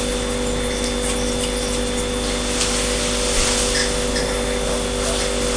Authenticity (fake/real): real